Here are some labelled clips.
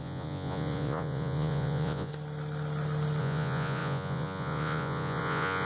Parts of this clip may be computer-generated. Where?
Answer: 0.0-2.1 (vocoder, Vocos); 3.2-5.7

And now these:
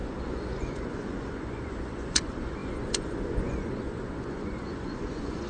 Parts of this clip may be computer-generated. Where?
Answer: 0.0-5.5 (vocoder, Vocos)

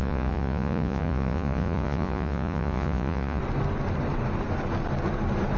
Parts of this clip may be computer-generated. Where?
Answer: 0.0-3.4 (vocoder, Vocos)

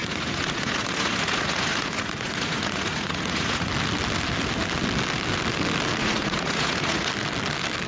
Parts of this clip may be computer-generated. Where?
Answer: 0.0-3.7 (vocoder, Vocos); 6.0-7.1